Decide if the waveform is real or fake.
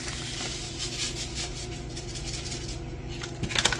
real